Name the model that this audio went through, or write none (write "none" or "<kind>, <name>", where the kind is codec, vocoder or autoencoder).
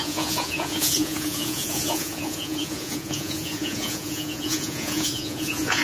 vocoder, Vocos